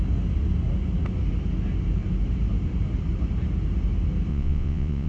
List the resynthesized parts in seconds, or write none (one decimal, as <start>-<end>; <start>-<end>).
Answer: 4.3-5.1